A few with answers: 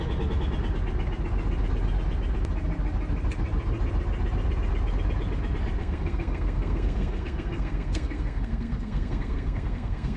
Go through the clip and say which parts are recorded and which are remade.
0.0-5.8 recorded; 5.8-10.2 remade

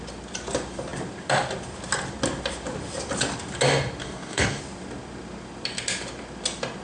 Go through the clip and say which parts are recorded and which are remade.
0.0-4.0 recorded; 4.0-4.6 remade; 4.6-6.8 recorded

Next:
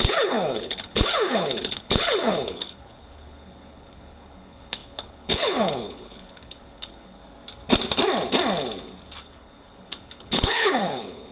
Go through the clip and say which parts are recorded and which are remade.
0.0-7.2 remade; 7.2-9.2 recorded; 9.2-11.3 remade